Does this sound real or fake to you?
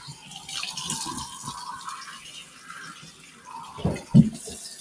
real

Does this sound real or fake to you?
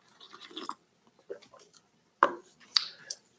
fake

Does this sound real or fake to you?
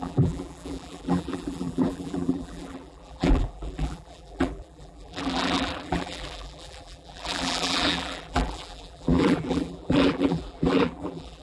fake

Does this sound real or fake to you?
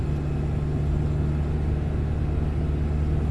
real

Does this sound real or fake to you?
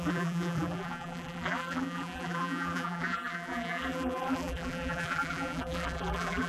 fake